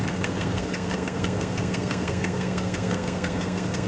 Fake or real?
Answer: fake